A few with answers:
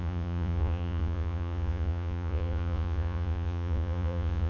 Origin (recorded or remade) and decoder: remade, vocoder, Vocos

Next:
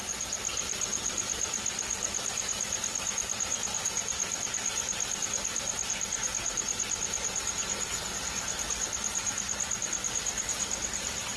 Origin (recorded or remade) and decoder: remade, vocoder, BigVGAN v2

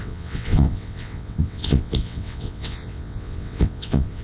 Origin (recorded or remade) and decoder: remade, vocoder, WaveNeXt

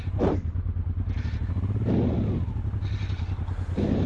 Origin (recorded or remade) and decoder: recorded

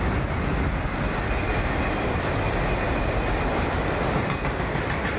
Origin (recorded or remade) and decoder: recorded